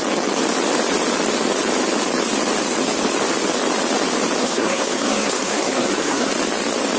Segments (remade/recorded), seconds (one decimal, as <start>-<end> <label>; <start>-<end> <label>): 0.0-4.4 recorded; 4.4-6.3 remade; 6.3-7.0 recorded